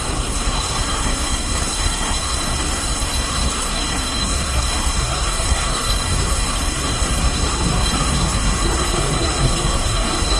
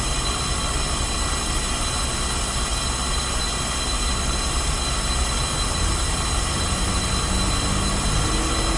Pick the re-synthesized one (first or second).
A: first